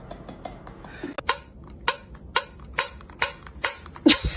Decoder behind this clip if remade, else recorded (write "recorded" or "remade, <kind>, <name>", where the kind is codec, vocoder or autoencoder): recorded